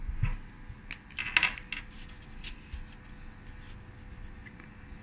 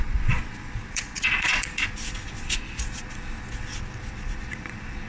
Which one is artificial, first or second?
second